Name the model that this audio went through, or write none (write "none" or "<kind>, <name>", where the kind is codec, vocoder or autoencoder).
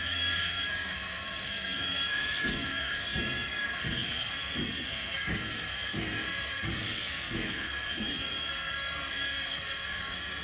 codec, SNAC